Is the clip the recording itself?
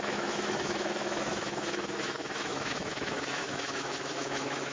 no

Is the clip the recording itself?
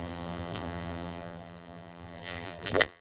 no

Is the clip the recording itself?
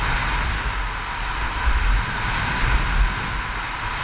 yes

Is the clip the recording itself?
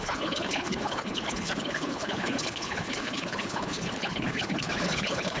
no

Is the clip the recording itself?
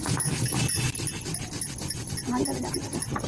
yes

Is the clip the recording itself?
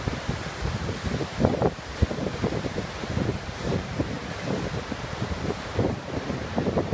yes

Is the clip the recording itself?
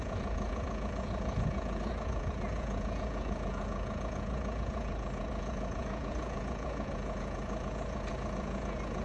no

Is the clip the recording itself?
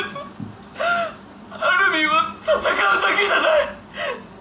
yes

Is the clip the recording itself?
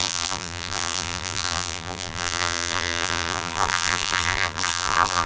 no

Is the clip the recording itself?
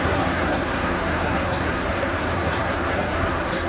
no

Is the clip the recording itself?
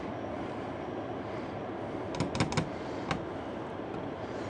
yes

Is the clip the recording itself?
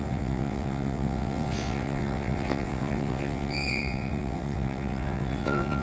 no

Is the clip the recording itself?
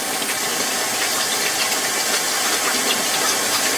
yes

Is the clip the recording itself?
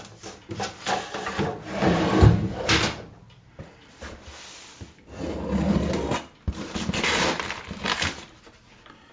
yes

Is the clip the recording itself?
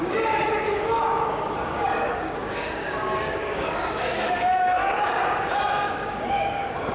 no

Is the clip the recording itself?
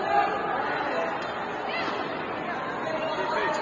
yes